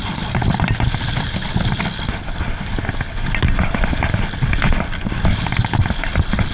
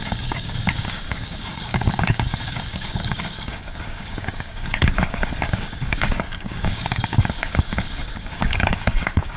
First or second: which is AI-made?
second